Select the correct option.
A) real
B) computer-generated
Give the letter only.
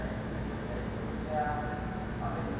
A